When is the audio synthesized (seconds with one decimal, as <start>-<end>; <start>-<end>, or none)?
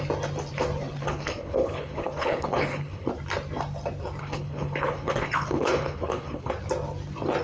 1.0-3.1; 4.2-6.5